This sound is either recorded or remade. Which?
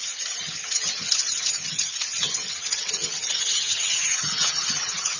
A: remade